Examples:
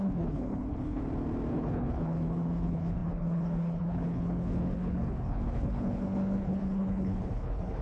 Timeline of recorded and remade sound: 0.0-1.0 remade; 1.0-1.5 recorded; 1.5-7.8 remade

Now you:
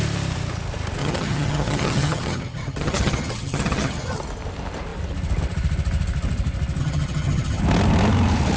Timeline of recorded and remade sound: 0.0-1.0 recorded; 1.0-4.2 remade; 4.2-6.8 recorded; 6.8-7.6 remade; 7.6-8.6 recorded

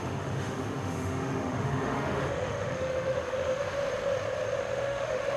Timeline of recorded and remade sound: 0.0-3.8 remade; 3.8-4.6 recorded; 4.6-5.4 remade

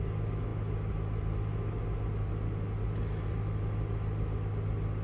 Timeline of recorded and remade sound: 0.0-5.0 recorded

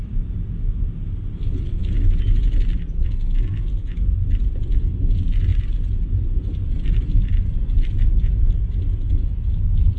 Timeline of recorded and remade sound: 0.0-5.5 recorded; 5.5-8.1 remade; 8.1-10.0 recorded

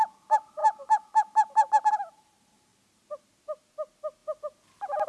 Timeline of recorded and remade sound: 0.0-5.1 recorded

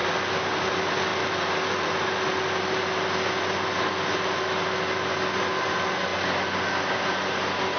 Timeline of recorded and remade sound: 0.0-7.8 recorded